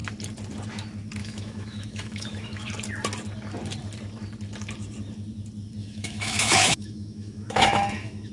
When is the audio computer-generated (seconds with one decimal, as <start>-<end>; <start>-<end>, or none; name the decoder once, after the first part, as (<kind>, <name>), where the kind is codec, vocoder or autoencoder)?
1.2-2.7 (autoencoder, DAC-VAE); 5.8-8.3